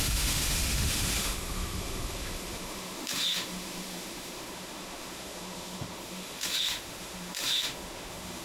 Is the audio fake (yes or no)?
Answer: yes